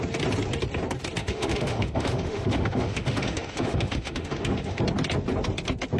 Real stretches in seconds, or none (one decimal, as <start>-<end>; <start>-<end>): 0.0-1.2; 4.8-6.0